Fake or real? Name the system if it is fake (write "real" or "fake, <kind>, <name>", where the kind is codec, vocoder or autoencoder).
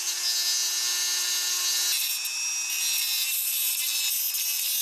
real